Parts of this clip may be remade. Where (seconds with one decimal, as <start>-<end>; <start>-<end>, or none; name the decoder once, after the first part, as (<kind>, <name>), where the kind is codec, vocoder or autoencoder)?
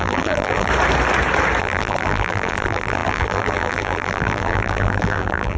0.0-0.7 (vocoder, BigVGAN v2); 1.6-5.6